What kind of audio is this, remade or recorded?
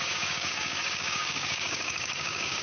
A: remade